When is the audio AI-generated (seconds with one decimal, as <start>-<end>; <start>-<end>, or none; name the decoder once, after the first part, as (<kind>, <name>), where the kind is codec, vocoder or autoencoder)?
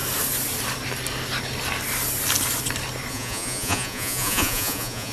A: 3.1-5.1 (vocoder, Vocos)